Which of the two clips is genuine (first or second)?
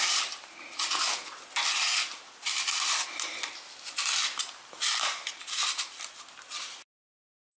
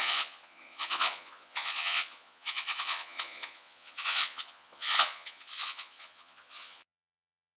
first